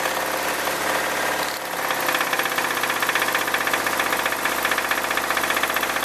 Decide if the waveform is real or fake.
real